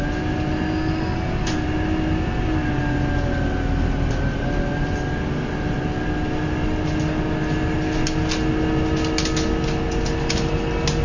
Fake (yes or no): no